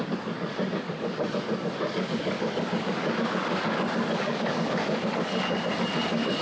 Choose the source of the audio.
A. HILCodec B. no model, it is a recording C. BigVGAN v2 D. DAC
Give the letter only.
D